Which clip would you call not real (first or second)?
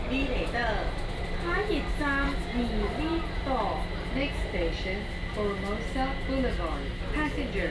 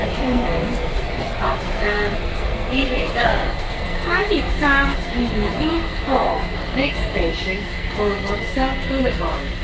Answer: second